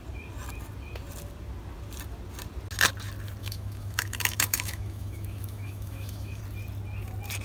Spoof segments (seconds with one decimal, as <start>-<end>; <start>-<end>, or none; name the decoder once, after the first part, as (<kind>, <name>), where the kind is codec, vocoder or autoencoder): 3.4-6.4 (autoencoder, DAC-VAE)